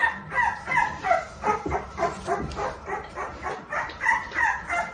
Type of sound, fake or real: fake